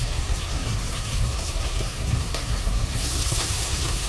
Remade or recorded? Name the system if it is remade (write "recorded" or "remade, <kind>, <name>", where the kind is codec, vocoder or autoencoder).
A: remade, codec, SNAC